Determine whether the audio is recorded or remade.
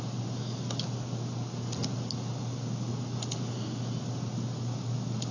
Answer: recorded